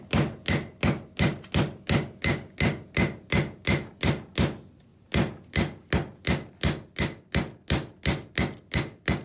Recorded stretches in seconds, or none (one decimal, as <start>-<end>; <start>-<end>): 0.0-9.2